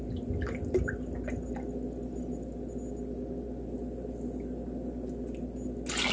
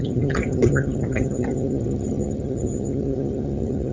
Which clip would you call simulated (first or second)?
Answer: second